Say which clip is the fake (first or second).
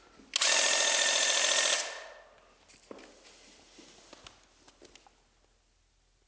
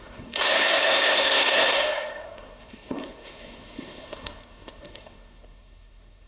second